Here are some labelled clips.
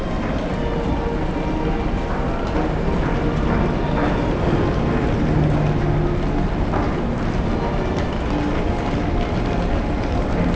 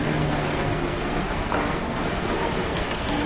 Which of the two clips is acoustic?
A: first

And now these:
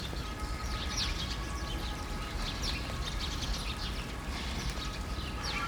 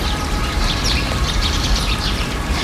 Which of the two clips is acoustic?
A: first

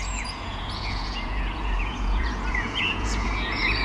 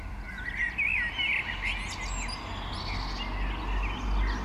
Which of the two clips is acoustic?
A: second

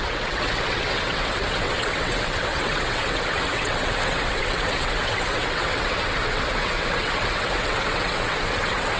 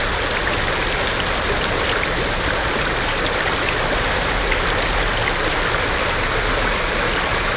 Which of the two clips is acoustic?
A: second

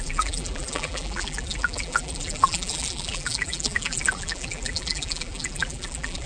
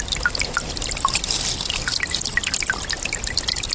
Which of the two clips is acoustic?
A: second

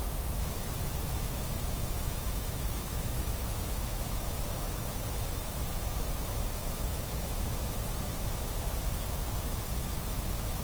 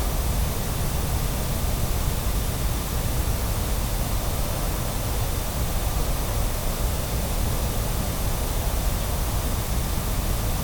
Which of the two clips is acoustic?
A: second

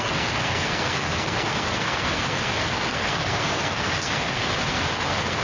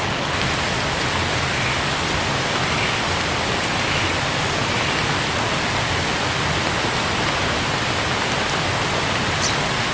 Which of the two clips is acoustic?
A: second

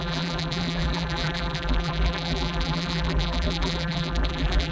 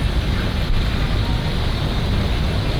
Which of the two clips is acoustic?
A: second